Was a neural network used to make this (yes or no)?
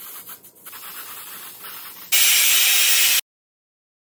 no